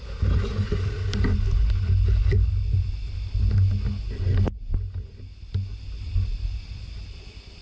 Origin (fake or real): real